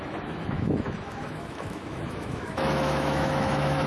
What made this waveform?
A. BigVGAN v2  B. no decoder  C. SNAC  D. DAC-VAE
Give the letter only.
D